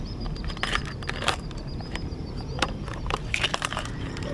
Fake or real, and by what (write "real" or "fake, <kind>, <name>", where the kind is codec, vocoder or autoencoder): fake, vocoder, BigVGAN v2